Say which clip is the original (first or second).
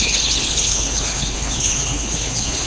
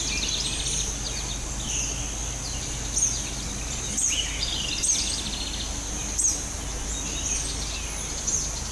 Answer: second